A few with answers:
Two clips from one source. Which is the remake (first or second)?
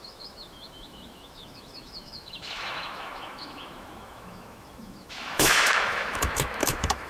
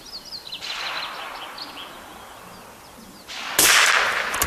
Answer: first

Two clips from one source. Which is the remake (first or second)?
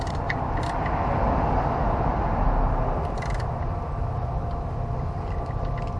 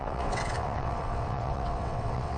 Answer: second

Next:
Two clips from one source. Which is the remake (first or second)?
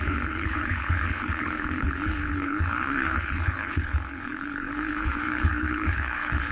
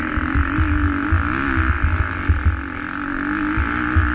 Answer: first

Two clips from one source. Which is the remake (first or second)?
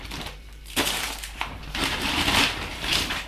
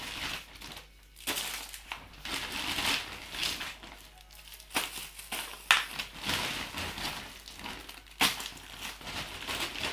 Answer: first